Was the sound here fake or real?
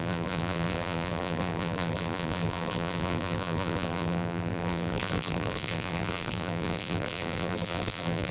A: fake